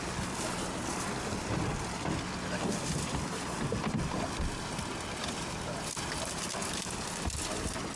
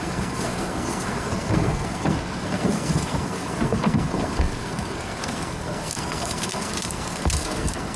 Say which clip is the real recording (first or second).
first